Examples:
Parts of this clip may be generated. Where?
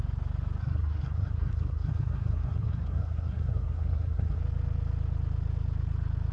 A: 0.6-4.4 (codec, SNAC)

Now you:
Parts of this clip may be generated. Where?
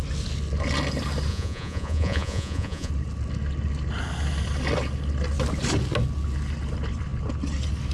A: 1.3-2.9 (vocoder, Vocos)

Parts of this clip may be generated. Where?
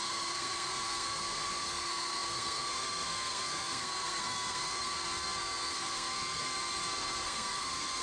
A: 0.0-8.0 (codec, SNAC)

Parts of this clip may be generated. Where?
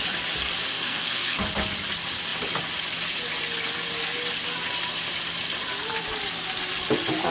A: 0.7-1.4 (codec, SNAC)